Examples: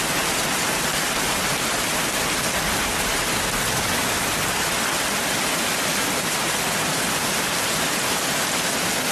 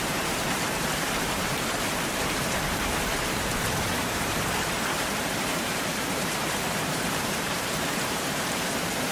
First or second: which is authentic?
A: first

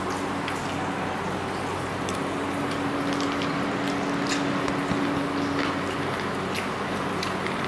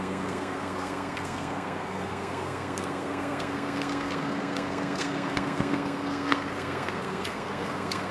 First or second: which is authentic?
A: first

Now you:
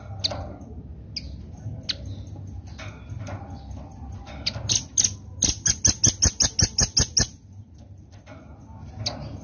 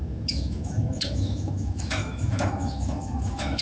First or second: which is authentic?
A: first